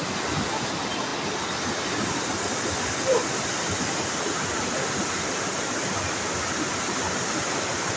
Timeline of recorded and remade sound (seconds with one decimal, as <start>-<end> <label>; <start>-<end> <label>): 0.0-8.0 recorded